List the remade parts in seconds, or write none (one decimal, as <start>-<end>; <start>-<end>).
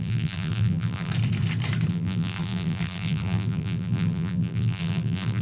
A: 0.0-1.1; 1.9-5.4